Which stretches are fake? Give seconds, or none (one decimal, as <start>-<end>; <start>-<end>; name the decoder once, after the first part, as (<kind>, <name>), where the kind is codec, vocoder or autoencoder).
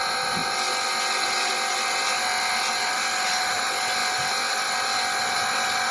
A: none